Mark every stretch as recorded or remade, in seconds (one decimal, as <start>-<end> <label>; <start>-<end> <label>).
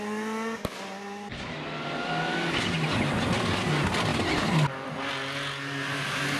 0.0-6.4 recorded